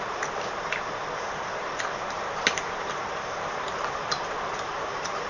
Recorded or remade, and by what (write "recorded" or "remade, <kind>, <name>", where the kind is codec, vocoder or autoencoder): remade, vocoder, BigVGAN v2